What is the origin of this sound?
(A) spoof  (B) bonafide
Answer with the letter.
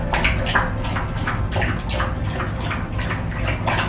B